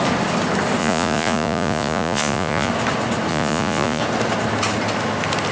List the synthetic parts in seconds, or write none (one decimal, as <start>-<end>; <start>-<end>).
0.8-2.7; 3.3-4.0